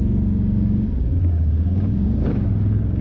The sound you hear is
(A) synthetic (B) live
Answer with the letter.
A